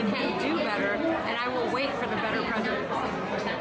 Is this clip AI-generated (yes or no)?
no